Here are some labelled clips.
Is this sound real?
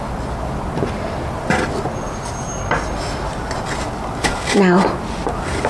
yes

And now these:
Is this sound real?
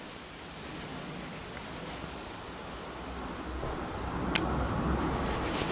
yes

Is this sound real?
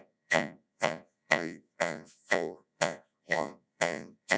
no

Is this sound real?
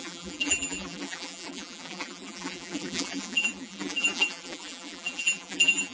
no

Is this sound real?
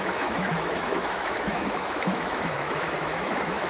no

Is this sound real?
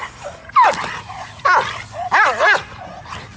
yes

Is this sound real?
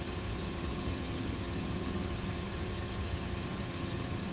no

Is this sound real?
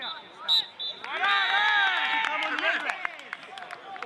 yes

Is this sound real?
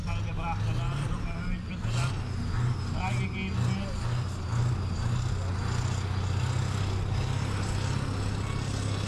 yes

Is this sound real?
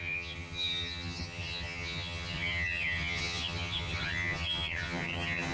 no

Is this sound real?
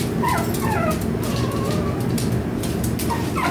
yes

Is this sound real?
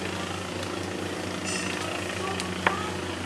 yes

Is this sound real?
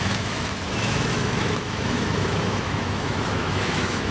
no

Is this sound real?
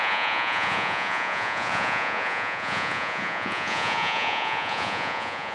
no